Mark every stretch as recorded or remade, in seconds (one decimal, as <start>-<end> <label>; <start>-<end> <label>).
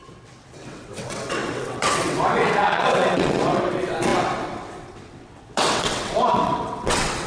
0.0-7.3 remade